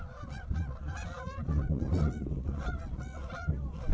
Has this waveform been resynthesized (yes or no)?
yes